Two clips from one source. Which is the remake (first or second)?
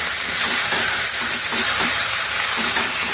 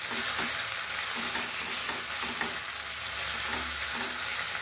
first